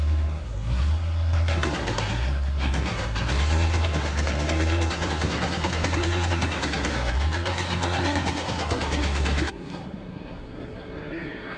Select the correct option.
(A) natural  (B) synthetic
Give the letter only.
B